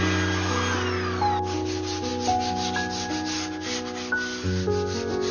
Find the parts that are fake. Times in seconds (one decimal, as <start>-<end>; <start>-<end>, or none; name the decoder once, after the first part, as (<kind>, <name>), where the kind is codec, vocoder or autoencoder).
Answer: none